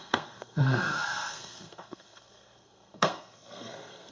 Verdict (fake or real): fake